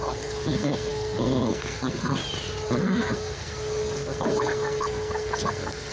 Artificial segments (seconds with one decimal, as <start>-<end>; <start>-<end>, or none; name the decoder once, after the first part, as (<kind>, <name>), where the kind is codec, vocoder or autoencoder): 0.0-2.2 (codec, SNAC); 2.8-5.9